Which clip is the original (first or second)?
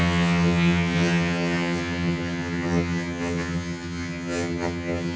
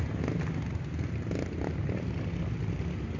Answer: second